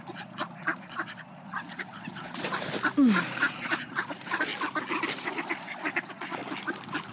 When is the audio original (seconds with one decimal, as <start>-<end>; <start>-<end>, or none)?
2.5-3.4; 4.5-5.2; 6.4-7.1